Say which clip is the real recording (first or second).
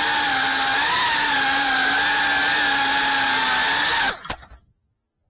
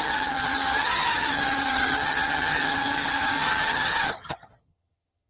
first